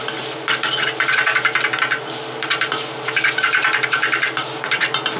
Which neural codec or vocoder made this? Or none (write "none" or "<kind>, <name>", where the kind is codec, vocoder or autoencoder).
none